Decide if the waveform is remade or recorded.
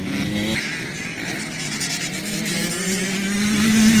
recorded